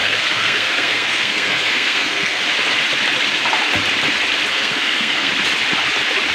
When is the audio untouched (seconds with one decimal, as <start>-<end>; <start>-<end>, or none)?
2.4-4.5; 5.3-6.3